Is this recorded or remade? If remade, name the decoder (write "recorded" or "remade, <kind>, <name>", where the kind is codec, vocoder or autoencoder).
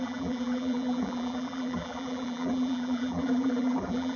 remade, vocoder, BigVGAN v2